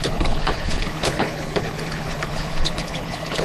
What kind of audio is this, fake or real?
fake